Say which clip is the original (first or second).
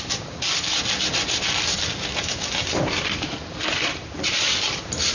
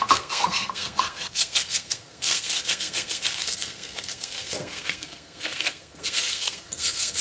first